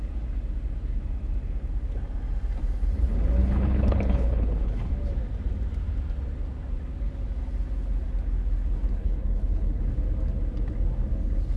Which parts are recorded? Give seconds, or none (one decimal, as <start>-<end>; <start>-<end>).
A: 0.0-3.4; 4.9-8.9; 9.8-11.6